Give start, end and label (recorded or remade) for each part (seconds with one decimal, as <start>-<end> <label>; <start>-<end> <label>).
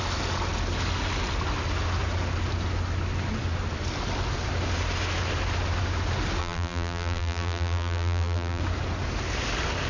0.0-6.4 recorded; 6.4-8.6 remade; 8.6-9.9 recorded